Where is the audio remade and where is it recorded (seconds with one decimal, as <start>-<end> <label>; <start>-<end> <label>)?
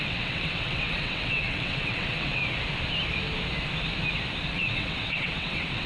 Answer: 0.0-2.4 remade; 2.4-4.5 recorded; 4.5-5.9 remade